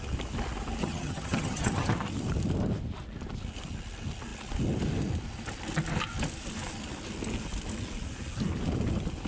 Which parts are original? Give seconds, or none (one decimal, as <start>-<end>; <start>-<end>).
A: 0.0-0.8; 1.9-9.3